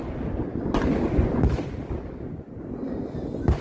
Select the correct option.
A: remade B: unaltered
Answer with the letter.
B